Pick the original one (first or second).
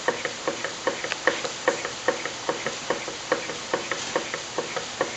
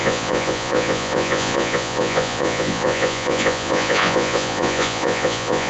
first